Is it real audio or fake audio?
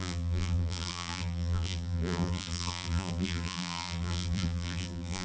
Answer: fake